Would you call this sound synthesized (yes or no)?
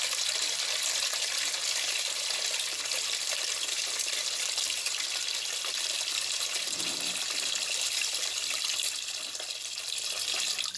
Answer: yes